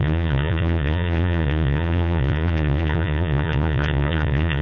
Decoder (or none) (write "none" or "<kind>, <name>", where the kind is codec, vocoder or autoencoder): vocoder, Vocos